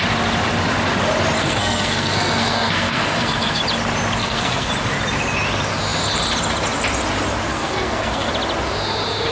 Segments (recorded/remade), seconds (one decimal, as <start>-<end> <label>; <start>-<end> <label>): 0.0-1.4 recorded; 1.4-3.6 remade; 3.6-4.2 recorded; 4.2-4.7 remade; 4.7-7.5 recorded; 7.5-8.3 remade; 8.3-9.3 recorded